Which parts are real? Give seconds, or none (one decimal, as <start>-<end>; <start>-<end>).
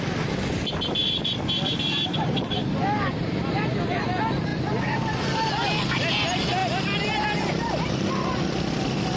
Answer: 0.0-1.0; 2.6-4.5; 5.5-6.6; 8.1-9.2